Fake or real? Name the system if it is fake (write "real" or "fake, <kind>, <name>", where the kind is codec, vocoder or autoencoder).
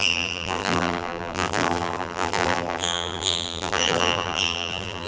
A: fake, vocoder, BigVGAN v2